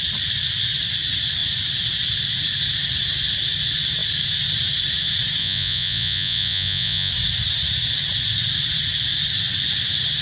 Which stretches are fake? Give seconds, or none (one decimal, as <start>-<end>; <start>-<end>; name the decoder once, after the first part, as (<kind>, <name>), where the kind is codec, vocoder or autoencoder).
5.4-7.1 (vocoder, Vocos)